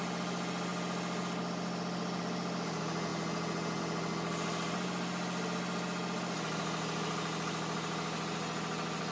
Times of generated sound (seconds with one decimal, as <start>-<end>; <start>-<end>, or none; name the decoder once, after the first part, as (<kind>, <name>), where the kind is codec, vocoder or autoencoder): none